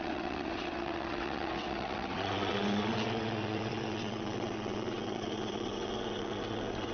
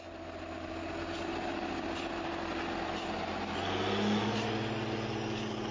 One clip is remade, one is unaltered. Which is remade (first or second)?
first